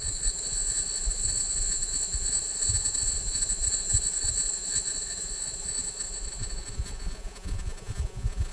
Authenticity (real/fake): fake